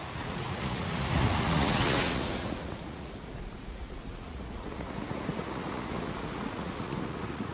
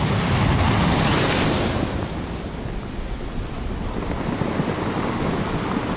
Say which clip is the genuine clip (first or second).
second